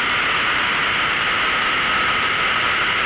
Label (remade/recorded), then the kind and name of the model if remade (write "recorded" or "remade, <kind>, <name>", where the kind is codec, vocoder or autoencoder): recorded